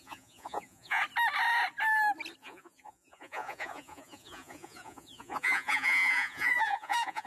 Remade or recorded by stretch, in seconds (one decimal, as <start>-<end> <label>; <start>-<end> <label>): 0.0-1.0 remade; 1.0-2.4 recorded; 2.4-7.3 remade